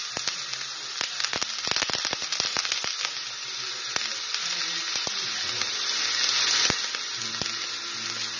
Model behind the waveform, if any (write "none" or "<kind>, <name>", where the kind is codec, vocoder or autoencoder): none